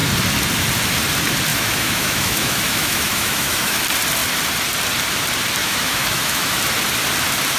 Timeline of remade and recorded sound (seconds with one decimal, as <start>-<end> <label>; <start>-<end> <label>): 0.0-1.5 recorded; 1.5-3.8 remade; 3.8-5.6 recorded; 5.6-6.6 remade; 6.6-7.6 recorded